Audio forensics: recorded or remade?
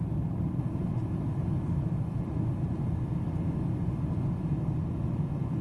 recorded